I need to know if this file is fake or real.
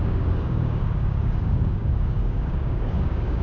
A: fake